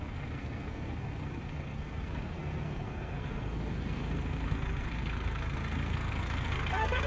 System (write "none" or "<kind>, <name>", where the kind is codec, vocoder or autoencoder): codec, SNAC